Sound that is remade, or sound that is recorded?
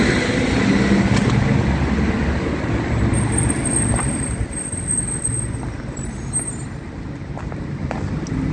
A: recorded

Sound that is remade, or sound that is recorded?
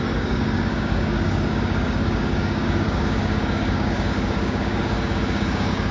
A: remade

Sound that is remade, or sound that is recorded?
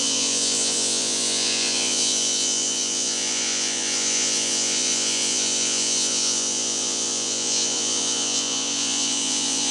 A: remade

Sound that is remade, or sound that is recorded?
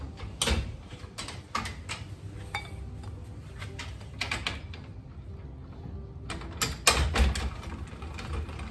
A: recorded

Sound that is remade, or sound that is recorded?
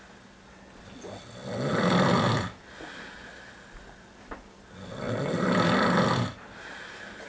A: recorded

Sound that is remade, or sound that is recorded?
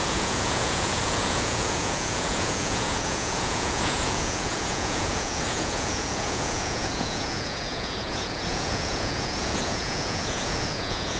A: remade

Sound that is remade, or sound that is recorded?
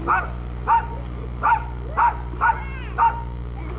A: recorded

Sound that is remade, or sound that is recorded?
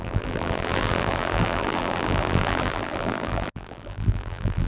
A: remade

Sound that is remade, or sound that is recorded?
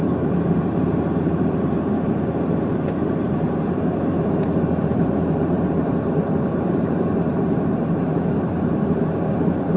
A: remade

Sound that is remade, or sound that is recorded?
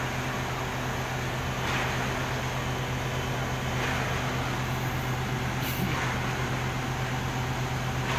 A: recorded